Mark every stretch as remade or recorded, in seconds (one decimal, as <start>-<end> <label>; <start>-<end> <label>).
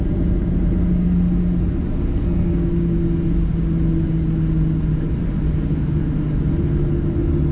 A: 0.0-2.1 recorded; 2.1-2.7 remade; 2.7-7.5 recorded